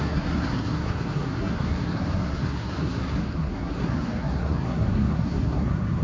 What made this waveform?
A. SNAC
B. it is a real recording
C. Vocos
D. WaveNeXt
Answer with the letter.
A